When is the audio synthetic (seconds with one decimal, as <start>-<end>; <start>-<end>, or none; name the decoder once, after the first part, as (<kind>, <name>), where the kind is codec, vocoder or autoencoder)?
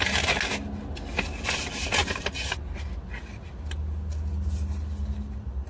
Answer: none